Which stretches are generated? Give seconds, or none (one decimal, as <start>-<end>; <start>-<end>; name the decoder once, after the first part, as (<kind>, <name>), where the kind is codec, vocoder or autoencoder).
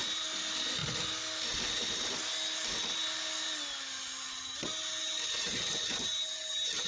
none